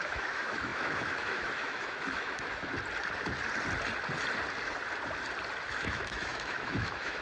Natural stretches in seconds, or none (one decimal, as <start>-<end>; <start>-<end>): 2.7-5.8